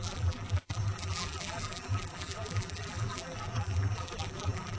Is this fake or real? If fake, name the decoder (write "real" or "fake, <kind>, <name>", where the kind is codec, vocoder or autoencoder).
fake, vocoder, BigVGAN v2